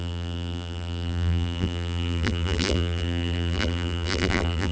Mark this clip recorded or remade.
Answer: remade